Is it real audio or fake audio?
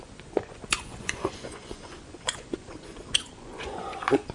fake